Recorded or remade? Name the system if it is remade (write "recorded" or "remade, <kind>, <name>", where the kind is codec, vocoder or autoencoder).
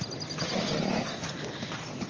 recorded